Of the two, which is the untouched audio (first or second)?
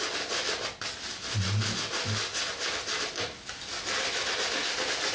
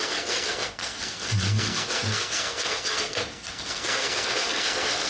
first